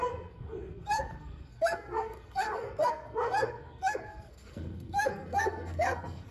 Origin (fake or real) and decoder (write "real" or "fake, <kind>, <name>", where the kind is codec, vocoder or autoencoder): fake, codec, SNAC